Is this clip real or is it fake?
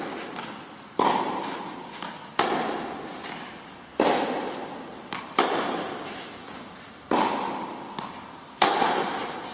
real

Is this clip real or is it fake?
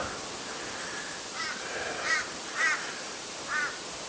real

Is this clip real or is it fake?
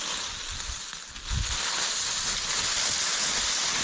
real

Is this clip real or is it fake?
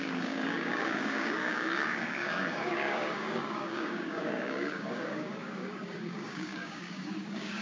fake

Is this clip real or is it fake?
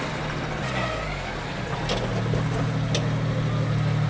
real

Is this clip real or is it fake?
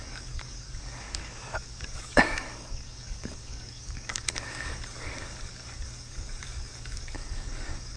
fake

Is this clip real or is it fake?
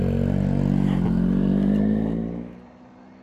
real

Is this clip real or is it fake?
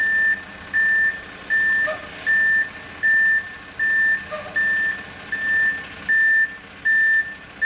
real